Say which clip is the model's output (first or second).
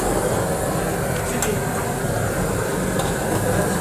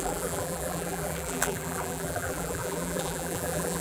second